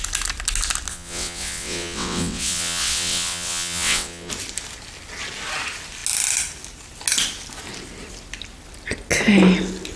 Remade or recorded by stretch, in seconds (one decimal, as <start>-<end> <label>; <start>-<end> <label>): 0.0-0.9 recorded; 0.9-4.3 remade; 4.3-10.0 recorded